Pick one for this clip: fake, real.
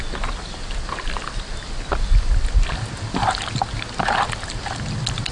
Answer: real